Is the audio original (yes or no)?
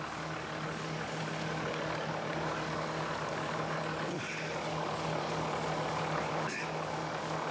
no